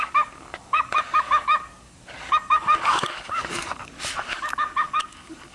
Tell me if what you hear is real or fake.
fake